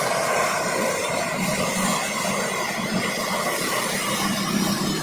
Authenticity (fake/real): real